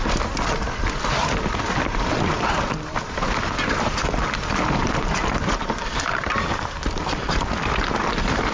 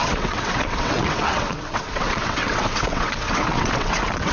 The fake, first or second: second